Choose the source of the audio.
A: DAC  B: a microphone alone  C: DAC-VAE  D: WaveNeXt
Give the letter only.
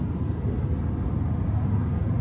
B